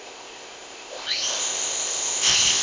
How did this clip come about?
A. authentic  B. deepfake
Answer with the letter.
B